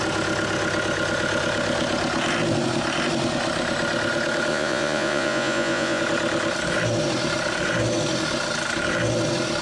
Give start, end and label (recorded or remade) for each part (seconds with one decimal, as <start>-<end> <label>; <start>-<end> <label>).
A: 0.0-4.5 recorded; 4.5-6.0 remade; 6.0-9.6 recorded